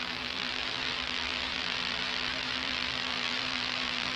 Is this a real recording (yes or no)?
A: no